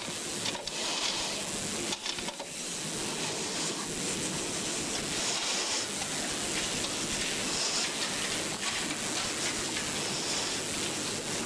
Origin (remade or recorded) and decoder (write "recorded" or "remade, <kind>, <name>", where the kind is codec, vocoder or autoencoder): recorded